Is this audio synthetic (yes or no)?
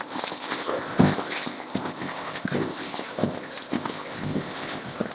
yes